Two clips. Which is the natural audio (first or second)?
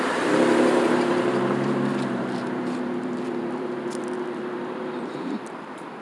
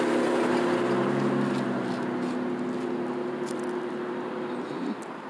second